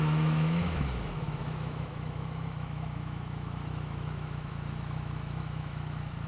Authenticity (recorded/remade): remade